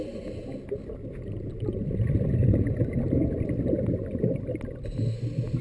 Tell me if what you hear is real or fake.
real